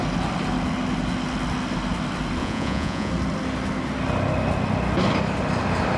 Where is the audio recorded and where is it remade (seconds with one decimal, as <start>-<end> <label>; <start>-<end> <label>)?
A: 0.0-2.4 recorded; 2.4-3.1 remade; 3.1-6.0 recorded